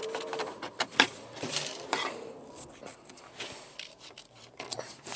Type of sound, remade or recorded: remade